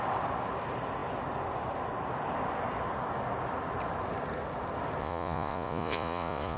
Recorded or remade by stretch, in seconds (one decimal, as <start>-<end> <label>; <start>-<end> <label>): 0.0-5.0 recorded; 5.0-6.6 remade